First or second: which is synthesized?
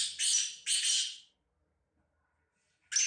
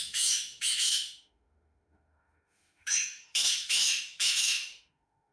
second